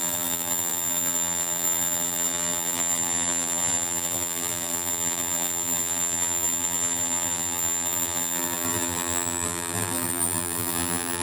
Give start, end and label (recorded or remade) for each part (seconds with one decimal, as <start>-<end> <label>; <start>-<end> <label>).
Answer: 0.0-11.2 remade